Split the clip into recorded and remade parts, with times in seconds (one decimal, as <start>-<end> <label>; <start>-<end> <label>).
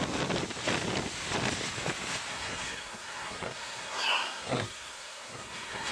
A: 0.0-2.3 recorded; 2.3-5.9 remade